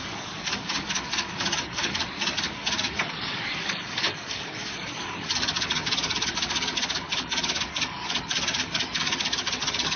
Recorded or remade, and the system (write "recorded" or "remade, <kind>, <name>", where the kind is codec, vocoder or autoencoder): remade, codec, DAC